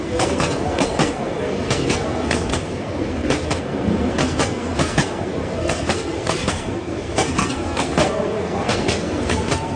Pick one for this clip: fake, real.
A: fake